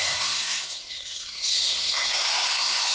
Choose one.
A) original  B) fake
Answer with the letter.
B